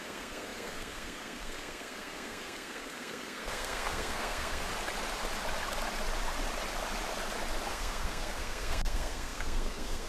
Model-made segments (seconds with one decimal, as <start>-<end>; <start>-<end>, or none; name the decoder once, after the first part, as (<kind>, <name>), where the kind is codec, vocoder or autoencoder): 0.0-4.7 (codec, SNAC); 7.7-10.1